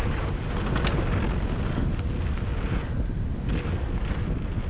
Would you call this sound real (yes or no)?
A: yes